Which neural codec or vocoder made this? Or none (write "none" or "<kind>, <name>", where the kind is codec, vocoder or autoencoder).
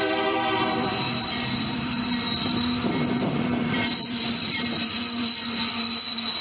vocoder, BigVGAN v2